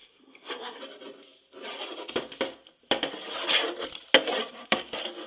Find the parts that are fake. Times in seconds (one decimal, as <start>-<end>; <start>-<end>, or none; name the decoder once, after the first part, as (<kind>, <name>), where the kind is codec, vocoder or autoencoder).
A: 0.0-0.8 (codec, SNAC)